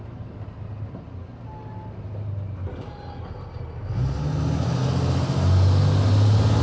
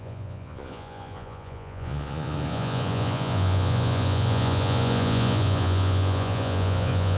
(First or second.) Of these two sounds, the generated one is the second